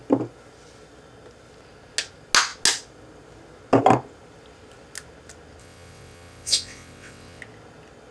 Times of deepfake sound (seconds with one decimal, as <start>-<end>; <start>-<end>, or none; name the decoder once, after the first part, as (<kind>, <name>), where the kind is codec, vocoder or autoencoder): 5.6-7.4 (vocoder, WaveNeXt)